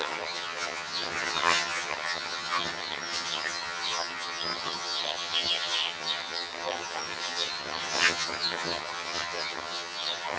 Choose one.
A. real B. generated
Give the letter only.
B